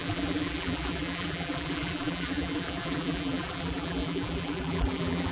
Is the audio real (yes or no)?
no